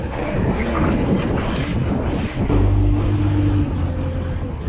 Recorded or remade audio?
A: recorded